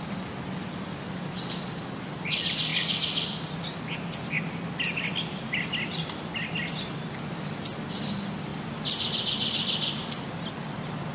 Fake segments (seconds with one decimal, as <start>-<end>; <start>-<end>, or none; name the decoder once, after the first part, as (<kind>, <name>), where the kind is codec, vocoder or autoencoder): none